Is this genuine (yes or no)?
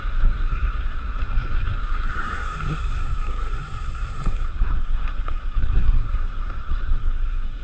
no